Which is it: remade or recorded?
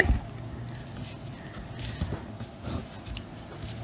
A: recorded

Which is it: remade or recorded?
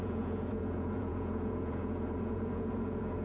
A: remade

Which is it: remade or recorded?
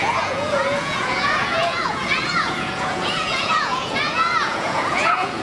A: remade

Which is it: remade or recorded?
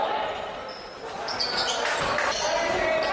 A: recorded